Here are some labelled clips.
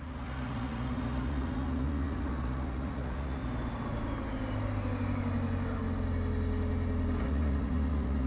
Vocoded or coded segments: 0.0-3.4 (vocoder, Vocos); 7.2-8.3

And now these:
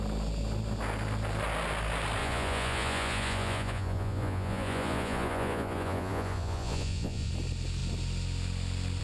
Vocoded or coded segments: 2.2-7.3 (vocoder, Vocos)